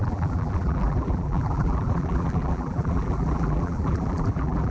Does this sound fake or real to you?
fake